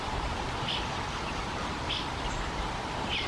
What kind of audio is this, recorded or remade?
recorded